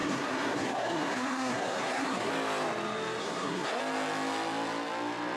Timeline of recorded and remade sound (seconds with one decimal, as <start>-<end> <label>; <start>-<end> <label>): 0.0-2.3 remade; 2.3-3.2 recorded; 3.2-3.8 remade; 3.8-5.4 recorded